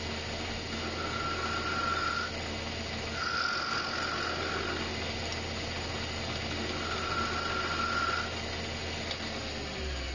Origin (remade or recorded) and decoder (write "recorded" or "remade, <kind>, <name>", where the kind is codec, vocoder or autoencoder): recorded